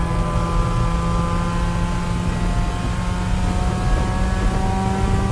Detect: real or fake real